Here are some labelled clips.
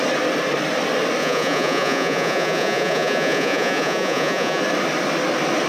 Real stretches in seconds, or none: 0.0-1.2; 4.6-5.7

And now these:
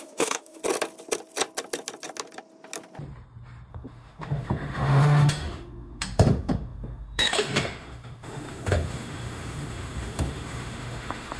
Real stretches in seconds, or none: 0.6-3.7

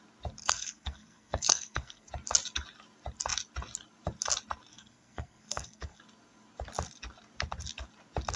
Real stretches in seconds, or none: 0.0-0.4; 2.1-4.7; 6.0-8.4

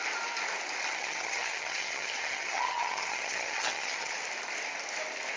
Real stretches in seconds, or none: 0.0-0.9; 4.1-5.4

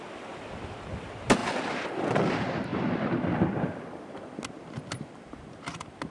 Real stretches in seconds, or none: 0.0-6.1

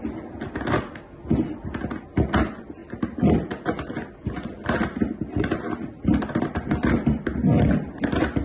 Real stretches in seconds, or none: 0.0-8.4

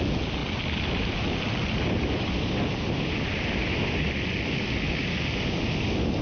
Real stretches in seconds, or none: 0.0-6.2